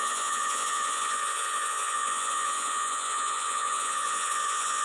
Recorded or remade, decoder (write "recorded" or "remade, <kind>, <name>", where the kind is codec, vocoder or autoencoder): remade, vocoder, Vocos